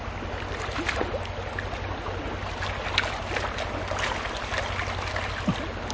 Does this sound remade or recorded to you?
recorded